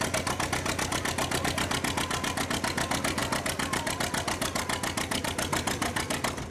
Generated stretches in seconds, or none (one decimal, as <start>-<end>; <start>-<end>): none